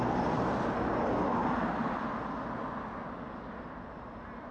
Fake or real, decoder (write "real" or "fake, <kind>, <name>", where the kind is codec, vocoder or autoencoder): real